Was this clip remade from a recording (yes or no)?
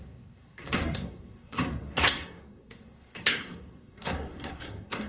yes